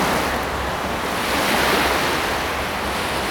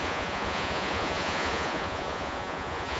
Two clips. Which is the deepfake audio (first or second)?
second